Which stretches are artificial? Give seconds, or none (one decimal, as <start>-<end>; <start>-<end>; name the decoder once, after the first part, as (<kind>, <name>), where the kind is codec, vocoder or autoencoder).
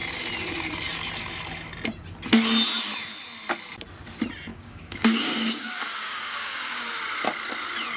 4.5-6.8 (codec, DAC)